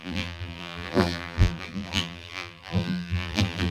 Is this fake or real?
fake